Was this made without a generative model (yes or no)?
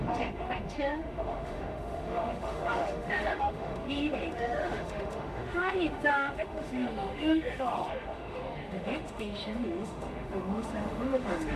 no